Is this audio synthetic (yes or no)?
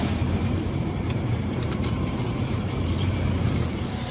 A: yes